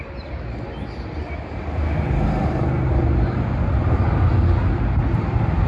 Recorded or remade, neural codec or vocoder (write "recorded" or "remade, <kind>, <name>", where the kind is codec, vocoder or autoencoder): recorded